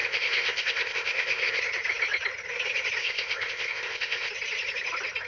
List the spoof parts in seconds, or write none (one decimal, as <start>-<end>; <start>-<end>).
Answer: 0.0-1.6; 3.0-4.3